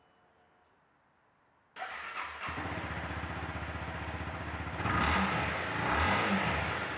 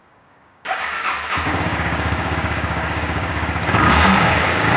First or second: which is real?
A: first